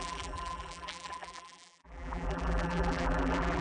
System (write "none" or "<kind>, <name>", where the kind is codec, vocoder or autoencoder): vocoder, BigVGAN v2